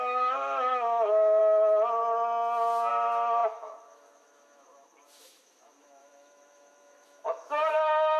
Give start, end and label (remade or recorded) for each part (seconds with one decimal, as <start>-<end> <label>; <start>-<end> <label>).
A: 0.0-1.4 remade; 1.4-2.9 recorded; 2.9-8.2 remade